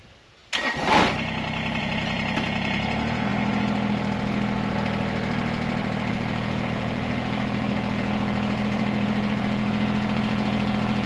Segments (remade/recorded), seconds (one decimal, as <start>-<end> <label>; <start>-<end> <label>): 0.0-0.4 remade; 0.4-1.8 recorded; 1.8-3.3 remade; 3.3-6.1 recorded; 6.1-11.1 remade